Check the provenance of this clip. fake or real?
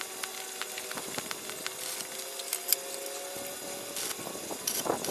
real